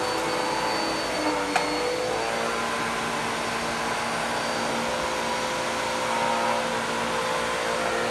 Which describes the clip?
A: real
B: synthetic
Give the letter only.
A